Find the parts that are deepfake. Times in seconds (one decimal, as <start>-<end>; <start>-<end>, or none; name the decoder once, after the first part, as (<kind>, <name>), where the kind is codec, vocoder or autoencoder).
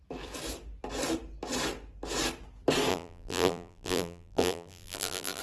2.9-5.4 (vocoder, BigVGAN v2)